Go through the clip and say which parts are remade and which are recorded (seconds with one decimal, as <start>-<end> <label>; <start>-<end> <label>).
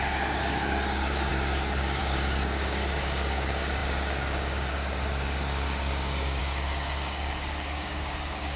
0.0-8.6 remade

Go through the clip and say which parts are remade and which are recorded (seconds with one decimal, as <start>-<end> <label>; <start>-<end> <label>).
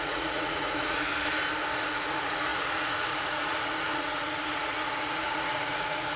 0.0-1.1 remade; 1.1-1.8 recorded; 1.8-6.2 remade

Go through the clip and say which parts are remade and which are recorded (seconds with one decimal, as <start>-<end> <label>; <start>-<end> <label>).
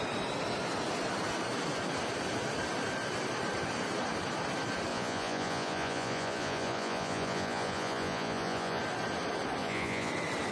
0.0-4.9 recorded; 4.9-8.8 remade; 8.8-9.6 recorded; 9.6-10.1 remade; 10.1-10.5 recorded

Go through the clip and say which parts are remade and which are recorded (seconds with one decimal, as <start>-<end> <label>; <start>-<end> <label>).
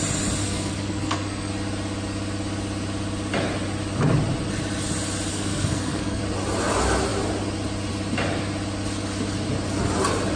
0.0-0.4 recorded; 0.4-1.5 remade; 1.5-5.3 recorded; 5.3-6.2 remade; 6.2-10.4 recorded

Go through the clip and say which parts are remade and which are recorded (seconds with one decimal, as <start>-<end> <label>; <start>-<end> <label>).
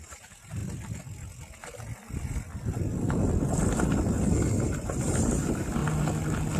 0.0-0.6 remade; 0.6-4.6 recorded; 4.6-5.8 remade; 5.8-6.6 recorded